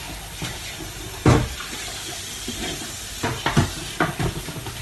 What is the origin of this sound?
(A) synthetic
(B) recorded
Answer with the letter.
B